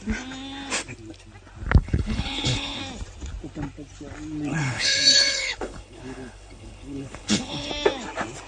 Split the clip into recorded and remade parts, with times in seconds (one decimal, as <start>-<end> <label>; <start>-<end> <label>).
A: 0.0-1.8 recorded; 1.8-2.8 remade; 2.8-4.5 recorded; 4.5-7.7 remade; 7.7-8.5 recorded